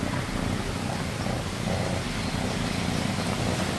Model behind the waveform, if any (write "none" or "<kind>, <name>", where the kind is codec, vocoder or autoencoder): none